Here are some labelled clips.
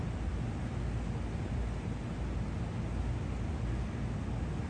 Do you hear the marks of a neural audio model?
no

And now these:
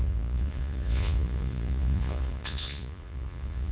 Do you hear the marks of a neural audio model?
yes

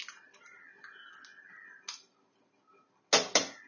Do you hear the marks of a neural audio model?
no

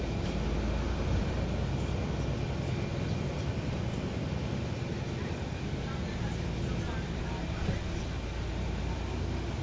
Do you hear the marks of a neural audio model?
no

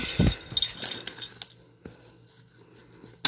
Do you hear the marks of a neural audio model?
no